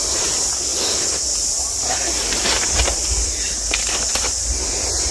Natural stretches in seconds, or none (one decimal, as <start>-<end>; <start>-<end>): 0.0-5.1